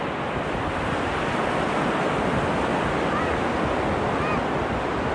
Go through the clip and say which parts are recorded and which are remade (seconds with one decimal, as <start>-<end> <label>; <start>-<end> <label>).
0.0-5.1 recorded